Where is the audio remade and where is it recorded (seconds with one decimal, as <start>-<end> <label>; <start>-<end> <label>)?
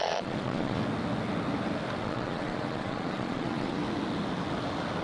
0.0-0.8 remade; 0.8-2.0 recorded; 2.0-3.8 remade; 3.8-5.0 recorded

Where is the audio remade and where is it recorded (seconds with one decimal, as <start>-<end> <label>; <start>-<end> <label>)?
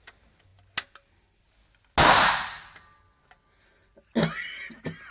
0.0-5.1 recorded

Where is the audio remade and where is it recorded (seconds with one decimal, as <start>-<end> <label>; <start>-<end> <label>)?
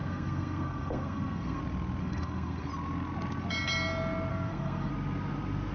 0.0-1.6 remade; 1.6-2.0 recorded; 2.0-2.7 remade; 2.7-4.3 recorded; 4.3-4.9 remade; 4.9-5.7 recorded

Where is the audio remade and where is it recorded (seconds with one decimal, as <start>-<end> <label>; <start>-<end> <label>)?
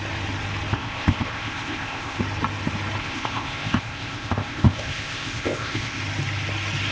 0.0-0.7 recorded; 0.7-2.2 remade; 2.2-3.0 recorded; 3.0-6.0 remade; 6.0-6.9 recorded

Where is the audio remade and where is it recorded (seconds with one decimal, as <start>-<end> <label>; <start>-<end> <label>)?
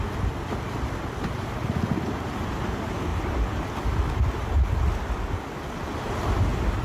0.0-6.8 recorded